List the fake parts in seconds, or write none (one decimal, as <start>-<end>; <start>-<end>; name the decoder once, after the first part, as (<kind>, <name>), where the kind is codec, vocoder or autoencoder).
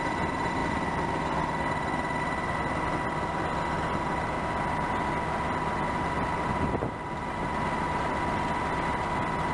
none